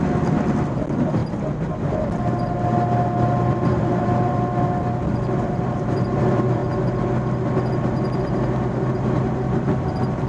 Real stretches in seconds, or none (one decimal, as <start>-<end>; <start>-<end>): 1.2-3.5; 6.6-8.9